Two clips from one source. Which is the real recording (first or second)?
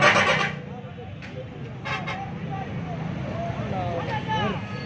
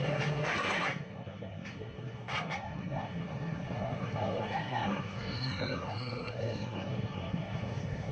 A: first